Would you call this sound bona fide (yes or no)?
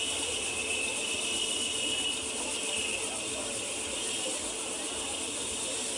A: yes